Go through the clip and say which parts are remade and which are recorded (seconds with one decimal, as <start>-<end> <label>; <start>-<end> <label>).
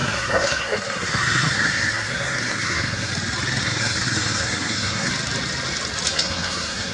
0.0-3.1 remade; 3.1-3.6 recorded; 3.6-5.1 remade; 5.1-6.1 recorded; 6.1-6.9 remade